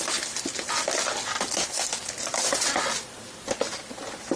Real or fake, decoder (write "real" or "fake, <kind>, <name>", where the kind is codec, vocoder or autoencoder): real